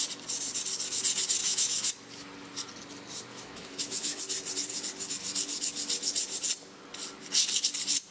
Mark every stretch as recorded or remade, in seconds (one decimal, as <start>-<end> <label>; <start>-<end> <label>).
0.0-1.4 recorded; 1.4-1.9 remade; 1.9-3.3 recorded; 3.3-4.2 remade; 4.2-8.1 recorded